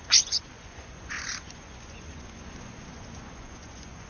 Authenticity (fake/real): fake